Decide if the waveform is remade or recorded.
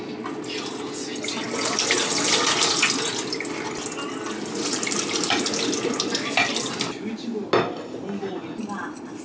recorded